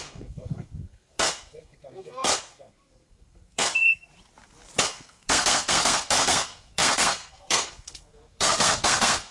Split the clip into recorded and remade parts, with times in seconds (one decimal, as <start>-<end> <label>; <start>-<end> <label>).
0.0-4.1 remade; 4.1-4.8 recorded; 4.8-9.3 remade